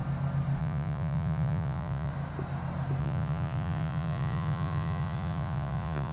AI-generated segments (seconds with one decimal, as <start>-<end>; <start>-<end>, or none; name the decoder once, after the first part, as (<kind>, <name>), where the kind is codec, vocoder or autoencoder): 0.6-2.1 (vocoder, Vocos); 3.0-6.1